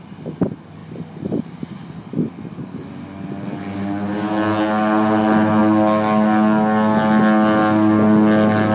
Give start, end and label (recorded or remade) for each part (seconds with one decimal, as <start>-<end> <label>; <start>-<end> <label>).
0.0-8.7 recorded